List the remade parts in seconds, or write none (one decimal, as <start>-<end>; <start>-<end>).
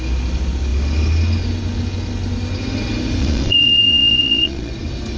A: 3.2-4.7